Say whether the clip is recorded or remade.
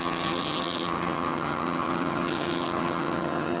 remade